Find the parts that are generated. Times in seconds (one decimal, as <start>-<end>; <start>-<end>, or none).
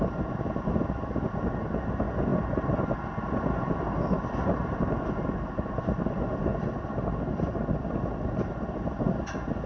none